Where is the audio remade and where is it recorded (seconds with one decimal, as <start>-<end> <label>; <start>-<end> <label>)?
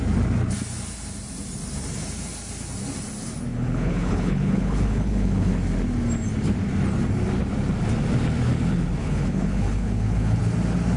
0.0-3.5 recorded; 3.5-5.5 remade; 5.5-9.0 recorded; 9.0-10.4 remade; 10.4-11.0 recorded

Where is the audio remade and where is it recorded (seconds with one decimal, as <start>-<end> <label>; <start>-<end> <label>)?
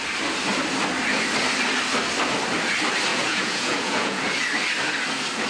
0.0-3.1 recorded; 3.1-4.2 remade; 4.2-5.5 recorded